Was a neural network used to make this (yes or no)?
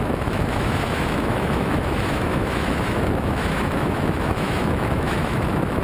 yes